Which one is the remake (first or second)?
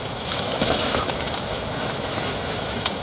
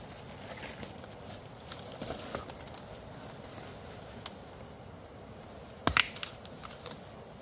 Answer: first